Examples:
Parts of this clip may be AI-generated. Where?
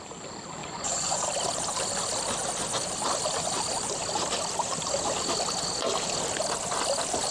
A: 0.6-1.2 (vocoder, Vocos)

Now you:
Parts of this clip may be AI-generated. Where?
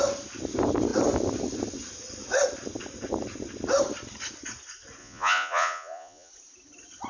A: 5.0-6.3 (vocoder, Vocos)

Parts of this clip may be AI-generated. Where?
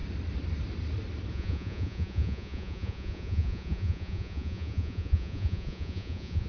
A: 1.3-6.5 (vocoder, Vocos)